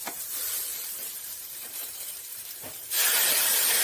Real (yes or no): no